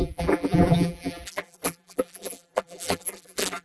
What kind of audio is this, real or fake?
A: fake